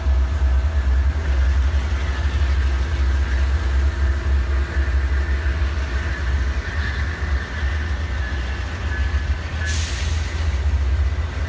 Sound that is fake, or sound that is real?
real